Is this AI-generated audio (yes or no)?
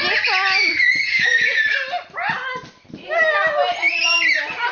no